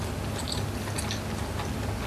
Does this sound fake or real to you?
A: real